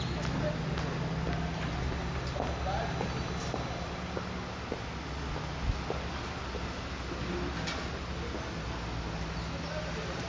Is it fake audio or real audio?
real